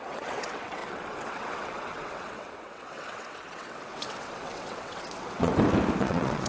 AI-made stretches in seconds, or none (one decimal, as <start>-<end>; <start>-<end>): 0.0-5.5; 6.0-6.5